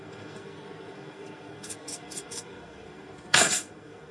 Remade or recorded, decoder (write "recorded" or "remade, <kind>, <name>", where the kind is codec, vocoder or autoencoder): remade, codec, SNAC